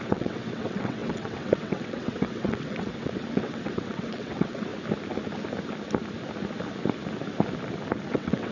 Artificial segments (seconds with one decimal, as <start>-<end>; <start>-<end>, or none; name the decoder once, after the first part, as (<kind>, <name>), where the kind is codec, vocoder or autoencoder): 0.0-4.7 (vocoder, WaveNeXt); 8.1-8.5